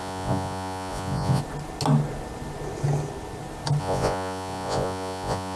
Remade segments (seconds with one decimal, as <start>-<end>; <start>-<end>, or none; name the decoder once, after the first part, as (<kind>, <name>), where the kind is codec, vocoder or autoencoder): 0.0-1.4 (vocoder, Vocos); 3.8-5.6